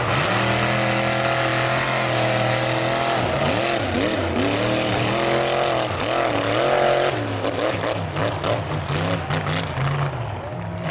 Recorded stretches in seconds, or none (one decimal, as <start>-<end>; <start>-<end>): 0.0-10.9